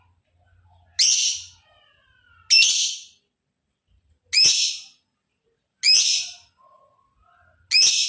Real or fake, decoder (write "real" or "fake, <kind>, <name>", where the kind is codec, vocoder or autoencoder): real